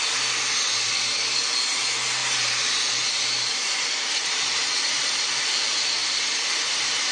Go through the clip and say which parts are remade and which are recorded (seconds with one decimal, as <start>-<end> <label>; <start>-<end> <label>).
0.0-2.2 recorded; 2.2-5.1 remade; 5.1-6.0 recorded; 6.0-7.1 remade